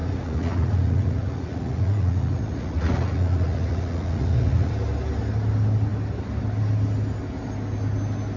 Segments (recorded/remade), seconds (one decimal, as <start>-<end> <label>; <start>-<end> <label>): 0.0-4.7 remade; 4.7-8.4 recorded